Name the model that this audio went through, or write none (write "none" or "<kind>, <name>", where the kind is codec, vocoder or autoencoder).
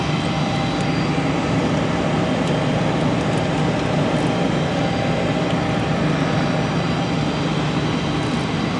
none